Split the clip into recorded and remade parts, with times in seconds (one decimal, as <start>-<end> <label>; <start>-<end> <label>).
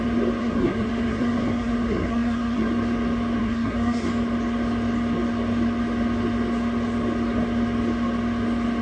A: 0.0-0.4 recorded; 0.4-2.7 remade; 2.7-3.4 recorded; 3.4-4.1 remade; 4.1-8.8 recorded